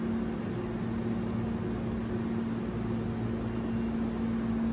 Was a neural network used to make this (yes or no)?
no